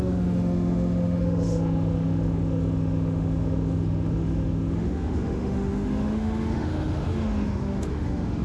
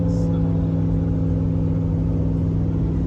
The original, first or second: second